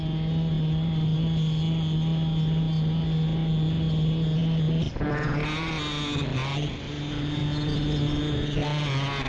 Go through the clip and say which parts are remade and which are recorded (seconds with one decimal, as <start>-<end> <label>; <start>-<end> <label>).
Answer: 0.0-9.3 recorded